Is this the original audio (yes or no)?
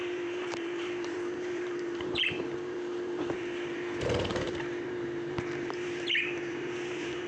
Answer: no